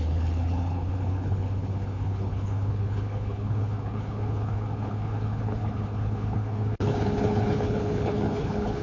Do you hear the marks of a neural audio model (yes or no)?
yes